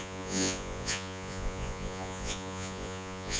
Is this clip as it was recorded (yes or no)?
no